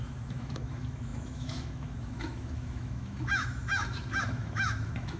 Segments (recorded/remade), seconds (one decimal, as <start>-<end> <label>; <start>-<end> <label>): 0.0-5.2 remade